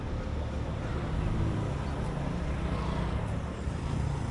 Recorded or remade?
recorded